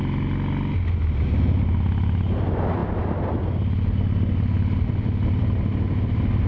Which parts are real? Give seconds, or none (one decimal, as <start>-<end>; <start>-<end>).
0.0-6.5